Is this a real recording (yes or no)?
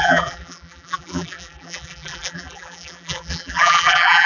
no